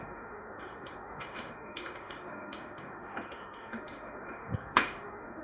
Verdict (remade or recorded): remade